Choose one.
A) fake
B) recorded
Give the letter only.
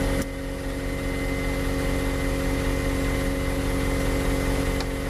B